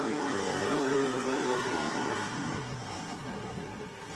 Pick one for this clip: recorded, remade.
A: remade